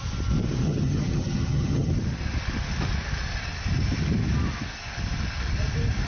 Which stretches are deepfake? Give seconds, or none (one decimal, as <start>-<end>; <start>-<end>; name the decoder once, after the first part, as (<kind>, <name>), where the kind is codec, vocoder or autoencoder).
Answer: 0.6-1.9 (vocoder, HiFi-GAN)